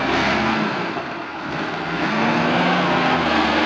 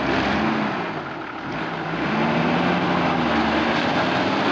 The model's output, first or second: first